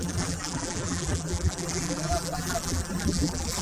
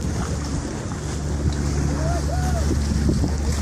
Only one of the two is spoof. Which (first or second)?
first